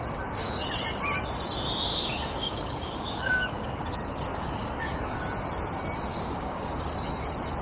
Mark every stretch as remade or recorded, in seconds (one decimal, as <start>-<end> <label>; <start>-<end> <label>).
0.0-1.9 recorded; 1.9-3.8 remade; 3.8-4.3 recorded; 4.3-5.2 remade; 5.2-6.1 recorded; 6.1-6.7 remade; 6.7-7.6 recorded